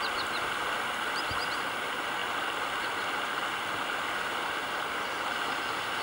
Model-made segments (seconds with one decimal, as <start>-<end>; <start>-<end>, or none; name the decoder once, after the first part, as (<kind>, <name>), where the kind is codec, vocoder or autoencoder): none